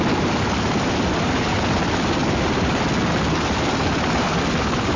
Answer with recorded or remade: recorded